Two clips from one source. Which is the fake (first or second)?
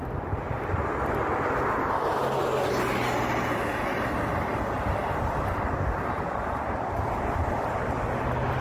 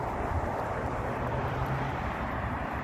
second